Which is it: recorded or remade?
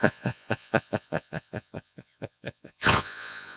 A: remade